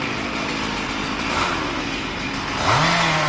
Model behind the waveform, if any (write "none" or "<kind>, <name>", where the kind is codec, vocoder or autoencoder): none